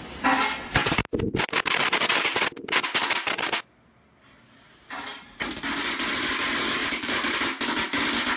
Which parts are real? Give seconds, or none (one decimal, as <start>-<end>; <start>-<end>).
0.0-0.8; 2.8-6.8; 7.3-8.4